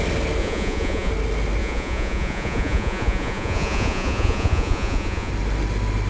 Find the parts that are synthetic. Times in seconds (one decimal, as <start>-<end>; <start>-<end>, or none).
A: 0.4-1.1; 1.6-5.3